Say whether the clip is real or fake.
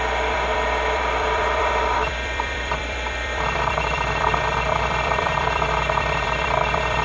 fake